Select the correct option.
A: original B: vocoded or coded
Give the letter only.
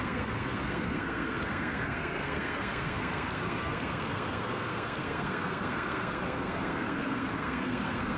B